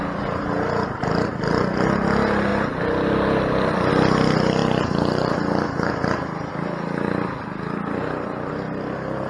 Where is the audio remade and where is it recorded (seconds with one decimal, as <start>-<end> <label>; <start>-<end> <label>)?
0.0-9.3 recorded